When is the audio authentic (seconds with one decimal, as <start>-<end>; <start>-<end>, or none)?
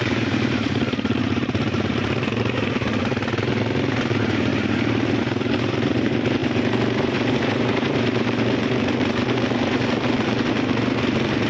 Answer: 3.1-3.9; 4.5-5.2